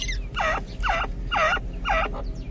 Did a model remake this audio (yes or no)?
no